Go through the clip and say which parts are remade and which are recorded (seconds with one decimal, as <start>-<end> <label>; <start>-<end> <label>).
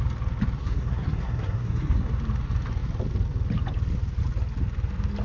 0.0-0.6 recorded; 0.6-2.1 remade; 2.1-5.2 recorded